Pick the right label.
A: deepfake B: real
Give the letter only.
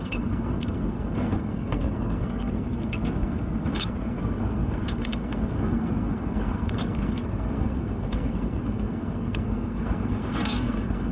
A